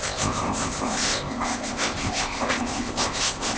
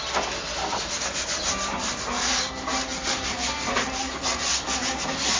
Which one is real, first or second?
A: second